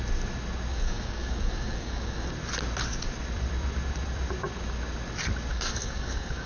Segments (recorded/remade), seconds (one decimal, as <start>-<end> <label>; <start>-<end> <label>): 0.0-0.7 recorded; 0.7-2.3 remade; 2.3-5.5 recorded; 5.5-6.5 remade